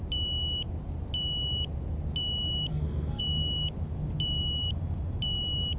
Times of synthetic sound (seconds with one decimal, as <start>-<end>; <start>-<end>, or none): 2.7-3.2